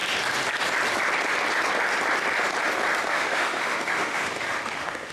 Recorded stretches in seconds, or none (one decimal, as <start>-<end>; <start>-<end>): 0.0-3.1